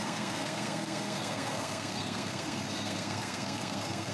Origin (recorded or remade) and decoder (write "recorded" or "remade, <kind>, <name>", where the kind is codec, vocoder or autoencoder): remade, codec, SNAC